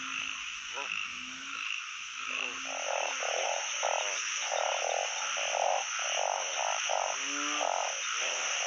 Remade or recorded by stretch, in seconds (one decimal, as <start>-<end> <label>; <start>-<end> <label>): 0.0-0.4 recorded; 0.4-4.8 remade; 4.8-6.0 recorded; 6.0-6.9 remade; 6.9-8.7 recorded